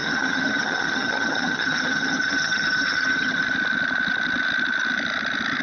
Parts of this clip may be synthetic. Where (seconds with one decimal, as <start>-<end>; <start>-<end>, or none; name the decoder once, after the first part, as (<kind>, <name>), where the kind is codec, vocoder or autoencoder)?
0.0-3.4 (vocoder, HiFi-GAN)